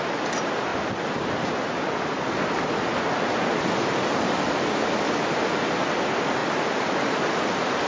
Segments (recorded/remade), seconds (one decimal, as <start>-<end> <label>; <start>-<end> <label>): 0.0-0.7 recorded; 0.7-2.1 remade; 2.1-6.4 recorded; 6.4-7.1 remade; 7.1-7.9 recorded